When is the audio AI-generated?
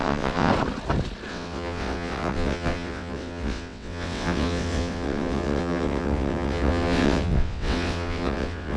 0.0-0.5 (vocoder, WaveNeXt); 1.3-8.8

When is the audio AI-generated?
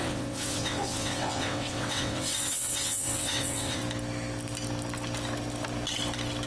0.0-3.8 (vocoder, WaveNeXt)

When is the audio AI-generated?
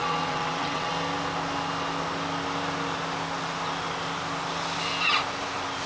0.0-0.9 (vocoder, WaveNeXt)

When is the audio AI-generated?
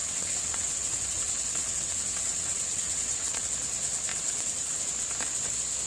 0.0-3.5 (vocoder, WaveNeXt); 4.1-4.8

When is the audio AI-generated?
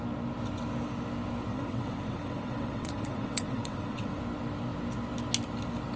1.5-4.2 (vocoder, WaveNeXt)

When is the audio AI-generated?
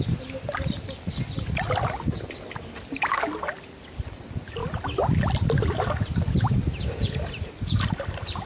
none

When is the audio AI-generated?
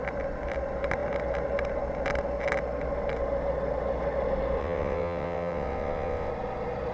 4.6-6.3 (vocoder, WaveNeXt)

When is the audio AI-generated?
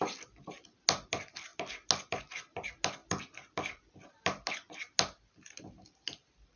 none